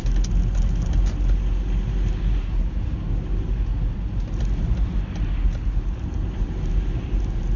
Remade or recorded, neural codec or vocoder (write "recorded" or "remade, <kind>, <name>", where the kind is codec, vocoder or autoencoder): recorded